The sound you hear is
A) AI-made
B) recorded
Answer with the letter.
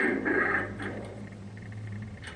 A